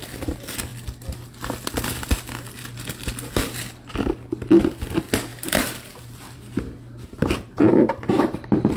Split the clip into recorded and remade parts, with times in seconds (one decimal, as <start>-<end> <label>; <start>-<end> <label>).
0.0-5.3 recorded; 5.3-8.8 remade